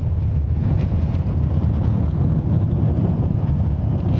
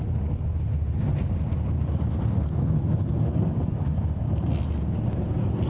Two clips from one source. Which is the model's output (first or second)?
first